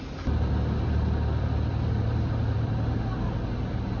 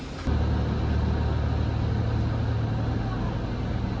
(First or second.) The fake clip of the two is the first